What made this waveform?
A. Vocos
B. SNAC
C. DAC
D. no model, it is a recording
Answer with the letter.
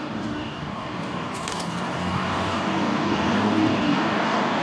C